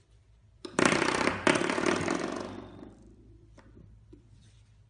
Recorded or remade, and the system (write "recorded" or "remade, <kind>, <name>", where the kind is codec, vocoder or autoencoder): remade, vocoder, BigVGAN v2